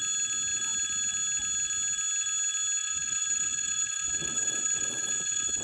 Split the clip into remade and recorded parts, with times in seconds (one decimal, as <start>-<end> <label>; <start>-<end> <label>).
0.0-2.8 recorded; 2.8-5.6 remade